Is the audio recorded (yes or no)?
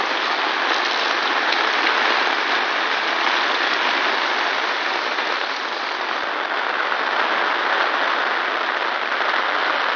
yes